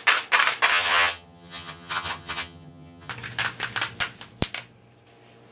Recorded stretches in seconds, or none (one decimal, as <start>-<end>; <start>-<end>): 0.0-0.7; 3.1-5.5